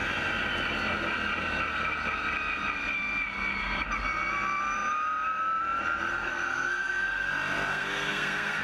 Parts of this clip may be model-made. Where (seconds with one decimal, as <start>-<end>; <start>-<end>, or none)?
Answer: 6.1-7.3; 7.7-8.6